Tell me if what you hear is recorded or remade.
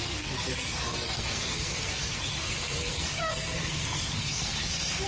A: remade